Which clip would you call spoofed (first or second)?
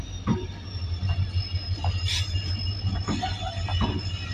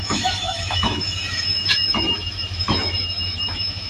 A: second